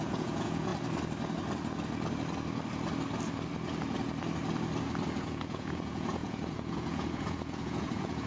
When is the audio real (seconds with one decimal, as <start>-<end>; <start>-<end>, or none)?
0.7-5.2